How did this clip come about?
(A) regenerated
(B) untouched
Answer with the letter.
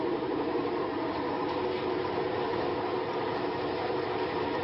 A